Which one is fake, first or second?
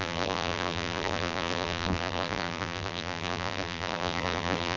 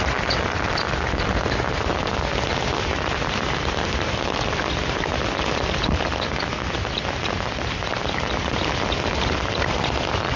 first